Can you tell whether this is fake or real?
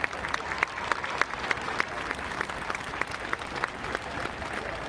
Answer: real